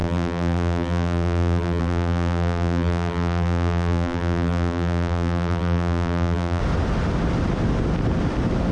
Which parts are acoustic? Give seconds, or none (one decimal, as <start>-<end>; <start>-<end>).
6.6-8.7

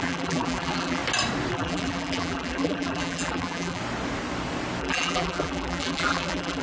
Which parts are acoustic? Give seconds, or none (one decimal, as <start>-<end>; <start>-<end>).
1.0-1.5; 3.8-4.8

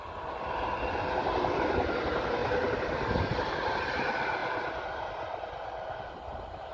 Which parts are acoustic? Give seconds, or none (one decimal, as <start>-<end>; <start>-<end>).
0.0-6.7

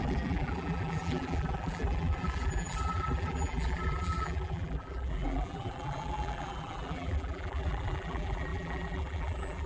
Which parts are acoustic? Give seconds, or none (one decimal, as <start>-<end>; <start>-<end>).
none

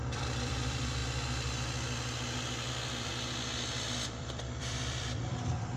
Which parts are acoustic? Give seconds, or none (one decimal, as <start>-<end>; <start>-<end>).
1.0-2.7; 3.1-3.7

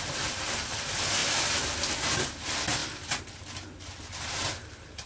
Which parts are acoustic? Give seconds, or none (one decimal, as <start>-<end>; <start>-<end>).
0.0-2.8